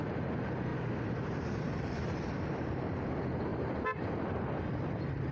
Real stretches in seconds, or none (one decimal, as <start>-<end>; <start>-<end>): 0.0-0.7; 1.9-3.5; 4.5-5.3

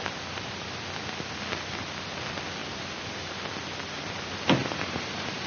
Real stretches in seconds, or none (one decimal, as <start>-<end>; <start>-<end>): 0.0-4.6